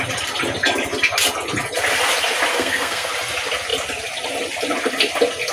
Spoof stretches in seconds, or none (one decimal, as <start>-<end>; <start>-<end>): 2.5-3.1